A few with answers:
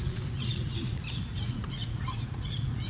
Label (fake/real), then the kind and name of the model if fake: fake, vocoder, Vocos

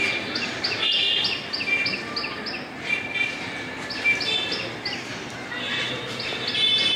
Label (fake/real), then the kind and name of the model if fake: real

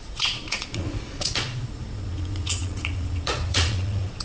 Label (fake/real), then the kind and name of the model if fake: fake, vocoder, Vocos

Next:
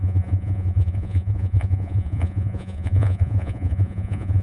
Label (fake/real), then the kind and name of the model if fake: fake, vocoder, Vocos